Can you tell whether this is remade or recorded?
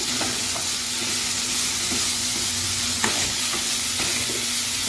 remade